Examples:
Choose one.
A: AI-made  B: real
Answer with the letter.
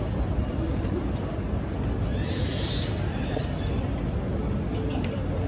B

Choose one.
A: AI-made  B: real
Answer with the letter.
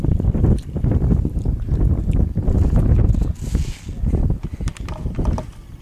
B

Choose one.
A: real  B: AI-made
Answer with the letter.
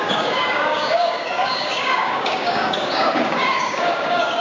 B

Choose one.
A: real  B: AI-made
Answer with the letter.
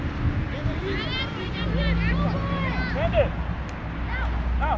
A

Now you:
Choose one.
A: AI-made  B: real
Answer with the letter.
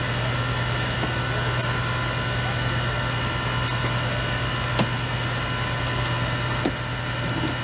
B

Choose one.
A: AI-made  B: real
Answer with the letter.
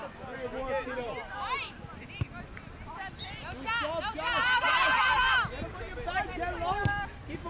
B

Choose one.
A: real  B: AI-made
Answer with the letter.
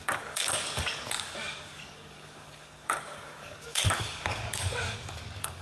B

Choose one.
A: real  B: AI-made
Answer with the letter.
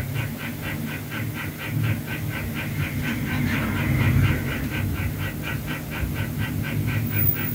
A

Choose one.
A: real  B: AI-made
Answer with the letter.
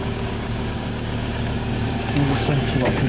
B